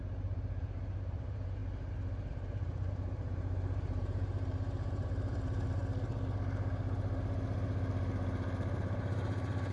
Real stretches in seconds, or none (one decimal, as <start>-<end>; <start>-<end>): 1.6-2.3; 5.8-8.8